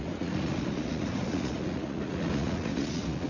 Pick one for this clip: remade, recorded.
remade